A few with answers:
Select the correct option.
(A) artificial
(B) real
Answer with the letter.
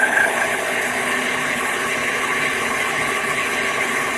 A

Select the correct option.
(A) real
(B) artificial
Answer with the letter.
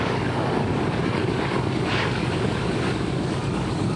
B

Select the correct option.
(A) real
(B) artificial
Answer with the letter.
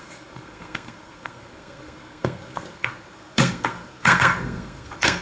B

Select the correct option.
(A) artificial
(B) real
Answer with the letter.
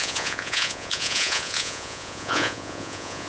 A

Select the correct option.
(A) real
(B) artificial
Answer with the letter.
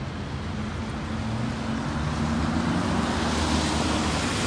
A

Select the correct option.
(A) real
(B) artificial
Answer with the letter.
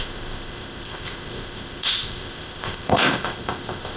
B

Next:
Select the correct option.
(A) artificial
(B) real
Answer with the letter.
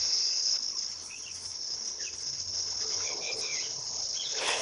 A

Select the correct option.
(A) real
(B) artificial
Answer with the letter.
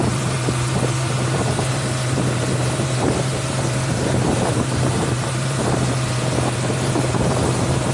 B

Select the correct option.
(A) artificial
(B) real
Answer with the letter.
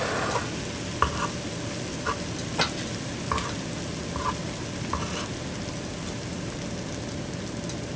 B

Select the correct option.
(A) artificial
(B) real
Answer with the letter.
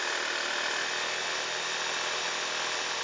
B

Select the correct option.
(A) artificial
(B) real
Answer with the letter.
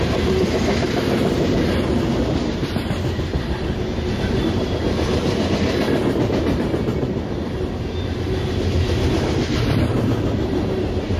B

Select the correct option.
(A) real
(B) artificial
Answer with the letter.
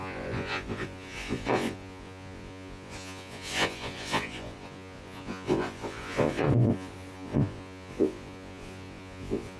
B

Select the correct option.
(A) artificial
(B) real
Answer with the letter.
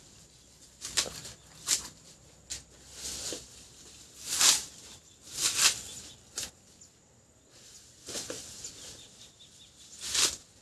B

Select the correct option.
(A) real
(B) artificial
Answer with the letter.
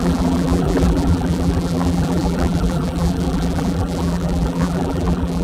B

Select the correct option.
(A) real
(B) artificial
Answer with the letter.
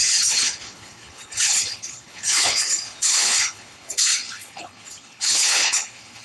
B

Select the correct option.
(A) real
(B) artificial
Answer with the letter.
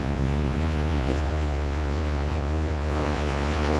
B